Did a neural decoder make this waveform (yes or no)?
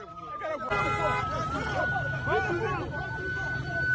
no